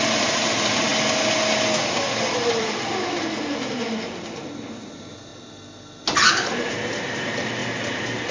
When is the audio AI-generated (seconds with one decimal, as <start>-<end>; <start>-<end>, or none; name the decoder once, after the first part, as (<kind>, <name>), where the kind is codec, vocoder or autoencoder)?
0.0-0.9 (vocoder, BigVGAN v2); 2.6-5.3; 6.3-7.6